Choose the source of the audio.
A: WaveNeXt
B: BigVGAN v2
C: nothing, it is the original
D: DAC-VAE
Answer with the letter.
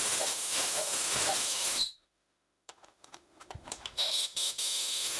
D